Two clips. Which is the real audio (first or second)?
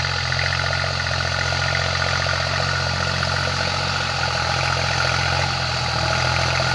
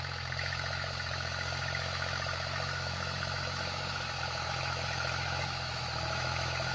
first